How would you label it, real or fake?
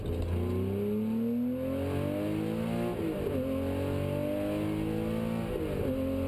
real